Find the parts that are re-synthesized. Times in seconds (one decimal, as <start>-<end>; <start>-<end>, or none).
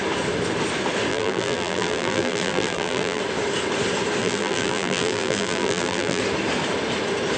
1.1-3.2; 4.2-6.2